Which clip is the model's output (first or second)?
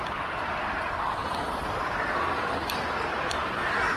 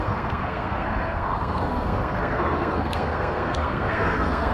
second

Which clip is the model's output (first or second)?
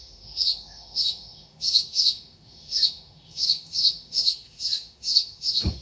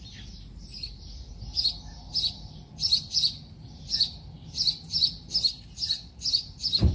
first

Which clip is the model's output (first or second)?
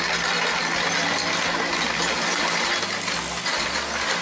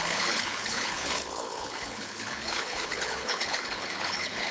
second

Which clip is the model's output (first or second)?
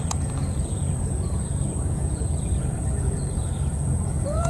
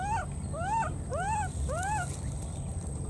first